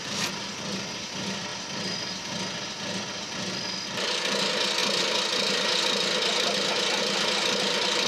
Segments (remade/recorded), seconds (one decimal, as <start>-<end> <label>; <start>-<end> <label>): 0.0-8.1 recorded